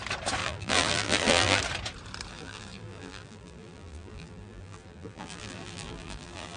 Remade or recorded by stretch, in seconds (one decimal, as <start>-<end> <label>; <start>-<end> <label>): 0.0-0.4 recorded; 0.4-1.6 remade; 1.6-2.3 recorded; 2.3-6.6 remade